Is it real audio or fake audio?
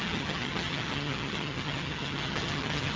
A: fake